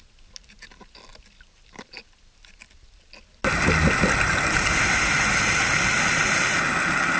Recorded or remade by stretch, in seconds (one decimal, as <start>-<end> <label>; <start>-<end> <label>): 0.0-7.2 recorded